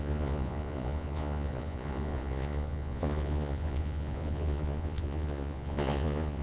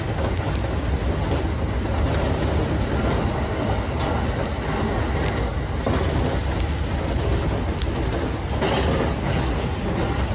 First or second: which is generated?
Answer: first